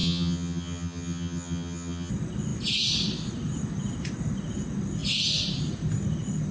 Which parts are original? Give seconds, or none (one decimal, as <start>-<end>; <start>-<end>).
2.1-6.5